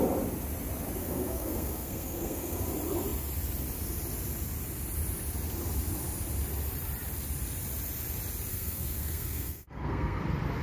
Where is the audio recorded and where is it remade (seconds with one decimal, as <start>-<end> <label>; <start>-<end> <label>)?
0.0-1.0 recorded; 1.0-2.6 remade; 2.6-8.5 recorded; 8.5-10.2 remade; 10.2-10.6 recorded